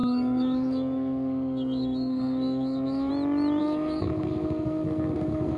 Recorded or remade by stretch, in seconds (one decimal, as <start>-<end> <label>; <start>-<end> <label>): 0.0-3.1 remade; 3.1-3.6 recorded; 3.6-5.6 remade